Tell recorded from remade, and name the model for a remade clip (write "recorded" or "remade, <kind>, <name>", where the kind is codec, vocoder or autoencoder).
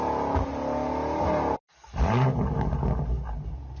recorded